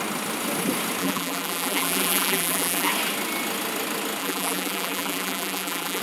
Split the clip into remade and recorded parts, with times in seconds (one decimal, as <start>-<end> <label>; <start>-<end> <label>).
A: 0.0-1.0 recorded; 1.0-2.9 remade; 2.9-4.2 recorded; 4.2-6.0 remade